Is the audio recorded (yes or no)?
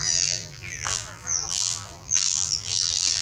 no